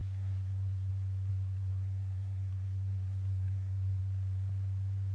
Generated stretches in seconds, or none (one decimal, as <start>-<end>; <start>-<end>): 0.0-0.9; 1.3-4.0